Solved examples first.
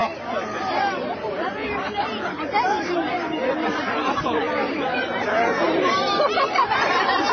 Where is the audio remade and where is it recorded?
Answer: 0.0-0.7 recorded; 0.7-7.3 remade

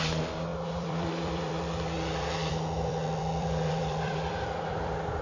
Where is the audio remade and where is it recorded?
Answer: 0.0-5.2 remade

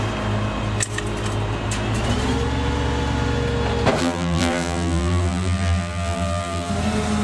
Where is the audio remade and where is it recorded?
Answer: 0.0-4.0 recorded; 4.0-6.7 remade; 6.7-7.2 recorded

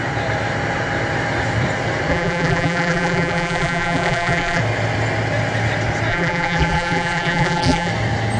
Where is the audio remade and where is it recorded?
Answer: 0.0-2.1 recorded; 2.1-4.6 remade; 4.6-6.1 recorded; 6.1-7.9 remade; 7.9-8.4 recorded